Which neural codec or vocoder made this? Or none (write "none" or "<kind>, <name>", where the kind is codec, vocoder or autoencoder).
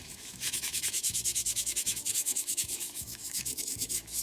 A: autoencoder, DAC-VAE